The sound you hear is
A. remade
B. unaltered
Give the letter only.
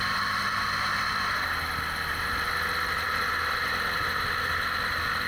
B